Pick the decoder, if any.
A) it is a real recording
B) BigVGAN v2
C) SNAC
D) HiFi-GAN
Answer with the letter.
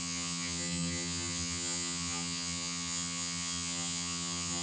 D